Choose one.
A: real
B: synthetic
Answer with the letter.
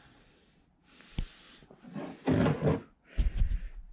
A